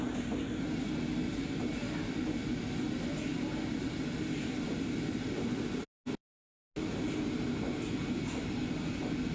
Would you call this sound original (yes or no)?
yes